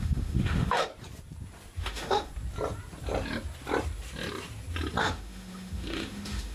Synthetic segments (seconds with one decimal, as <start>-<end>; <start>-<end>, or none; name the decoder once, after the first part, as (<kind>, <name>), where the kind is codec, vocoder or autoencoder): 0.0-0.9 (autoencoder, DAC-VAE); 1.8-2.3; 5.0-6.5